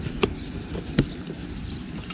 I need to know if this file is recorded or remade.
recorded